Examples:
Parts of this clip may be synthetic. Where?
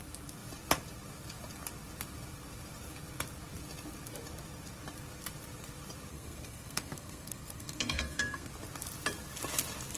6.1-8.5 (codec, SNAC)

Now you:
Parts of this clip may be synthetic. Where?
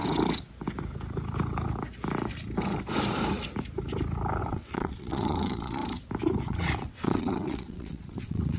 4.4-5.8 (vocoder, WaveNeXt); 6.4-8.6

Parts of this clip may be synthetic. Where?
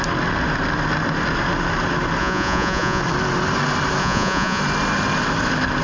2.2-3.0 (vocoder, Vocos); 4.0-4.6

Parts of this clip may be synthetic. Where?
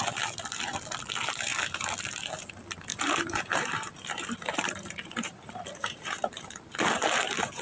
2.9-7.6 (vocoder, BigVGAN v2)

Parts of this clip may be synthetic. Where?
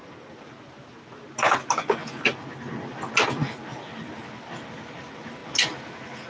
none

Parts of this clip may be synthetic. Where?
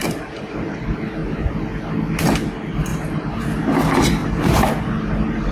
0.0-0.7 (vocoder, BigVGAN v2); 2.9-3.4; 4.2-5.5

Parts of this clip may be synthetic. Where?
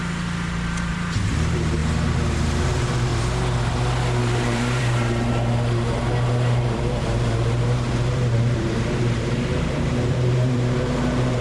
0.0-1.8 (vocoder, BigVGAN v2); 2.6-3.1; 4.2-11.4